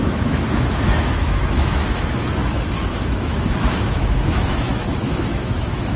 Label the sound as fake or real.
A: fake